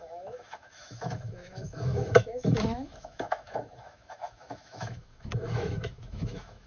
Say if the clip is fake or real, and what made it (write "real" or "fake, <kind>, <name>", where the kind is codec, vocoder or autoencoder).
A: fake, autoencoder, DAC-VAE